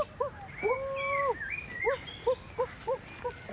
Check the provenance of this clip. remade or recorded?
recorded